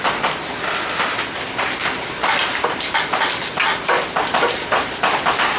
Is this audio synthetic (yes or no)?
yes